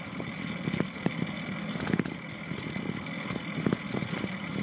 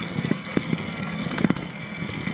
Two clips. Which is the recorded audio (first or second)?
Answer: first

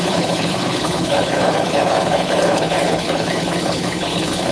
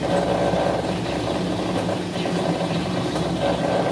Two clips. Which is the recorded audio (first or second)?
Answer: second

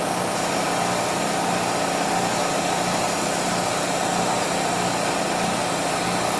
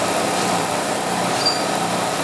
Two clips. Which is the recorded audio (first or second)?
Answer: first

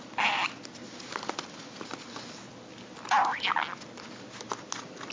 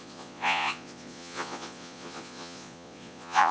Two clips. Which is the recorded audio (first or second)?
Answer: first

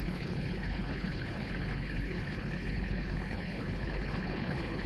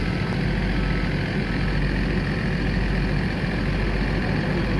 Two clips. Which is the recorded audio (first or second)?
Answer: second